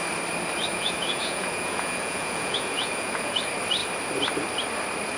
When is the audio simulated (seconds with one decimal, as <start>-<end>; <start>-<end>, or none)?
0.7-3.4